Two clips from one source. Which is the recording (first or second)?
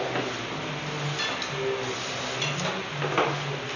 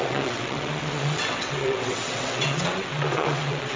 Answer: first